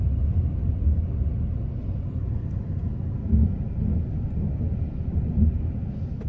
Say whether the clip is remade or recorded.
recorded